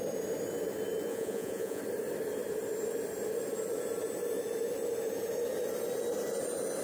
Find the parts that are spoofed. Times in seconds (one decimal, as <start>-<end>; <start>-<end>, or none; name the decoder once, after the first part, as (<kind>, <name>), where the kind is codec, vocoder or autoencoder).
1.1-1.8 (vocoder, Vocos)